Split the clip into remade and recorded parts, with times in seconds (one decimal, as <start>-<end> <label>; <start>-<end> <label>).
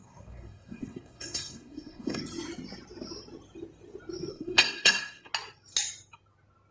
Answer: 0.0-2.2 remade; 2.2-4.3 recorded; 4.3-5.3 remade; 5.3-6.7 recorded